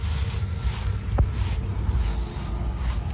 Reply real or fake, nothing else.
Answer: real